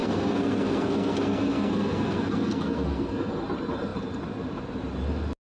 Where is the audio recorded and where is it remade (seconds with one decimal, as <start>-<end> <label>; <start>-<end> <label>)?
0.0-3.3 remade; 3.3-5.5 recorded